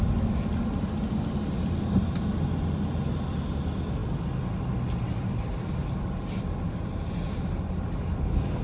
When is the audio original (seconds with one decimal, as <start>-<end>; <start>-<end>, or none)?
0.0-8.6